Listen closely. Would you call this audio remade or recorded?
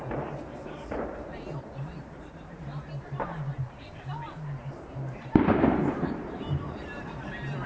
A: remade